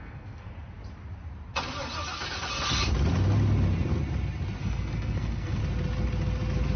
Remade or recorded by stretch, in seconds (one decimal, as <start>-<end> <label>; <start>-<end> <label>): 0.0-0.5 remade; 0.5-4.6 recorded; 4.6-5.6 remade; 5.6-6.8 recorded